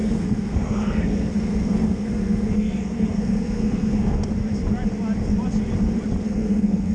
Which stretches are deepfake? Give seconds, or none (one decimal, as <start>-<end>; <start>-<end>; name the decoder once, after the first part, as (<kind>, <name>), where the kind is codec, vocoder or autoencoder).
0.0-4.3 (codec, SNAC); 6.2-6.9

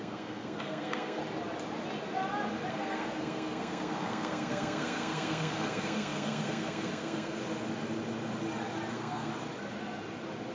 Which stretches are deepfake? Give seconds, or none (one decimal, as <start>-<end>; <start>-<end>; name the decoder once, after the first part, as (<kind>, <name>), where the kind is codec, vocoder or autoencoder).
0.0-1.2 (codec, SNAC); 2.7-7.4; 8.9-9.3